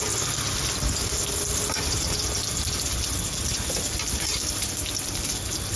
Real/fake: real